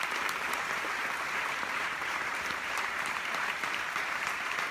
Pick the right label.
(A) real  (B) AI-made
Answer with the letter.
B